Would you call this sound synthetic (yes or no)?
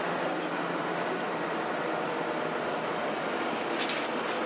no